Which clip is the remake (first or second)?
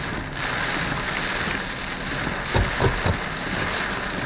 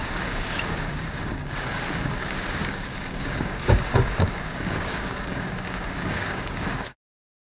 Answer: second